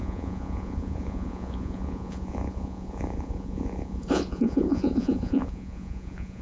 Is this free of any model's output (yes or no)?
no